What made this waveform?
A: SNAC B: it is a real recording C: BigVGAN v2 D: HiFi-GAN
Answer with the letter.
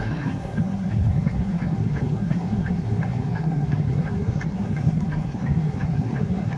A